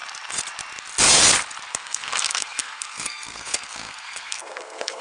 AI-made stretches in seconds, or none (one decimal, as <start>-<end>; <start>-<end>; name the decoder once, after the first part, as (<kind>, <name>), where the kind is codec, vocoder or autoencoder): 1.7-5.0 (codec, SNAC)